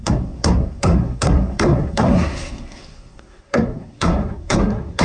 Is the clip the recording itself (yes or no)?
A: no